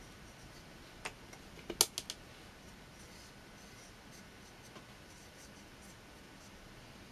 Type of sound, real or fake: real